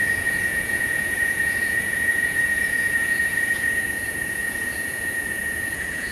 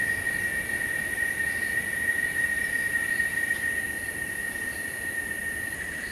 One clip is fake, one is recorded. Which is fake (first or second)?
first